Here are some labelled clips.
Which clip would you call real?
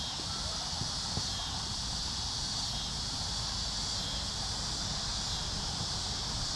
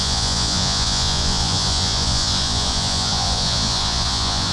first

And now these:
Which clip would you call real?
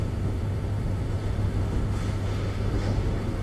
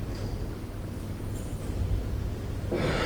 second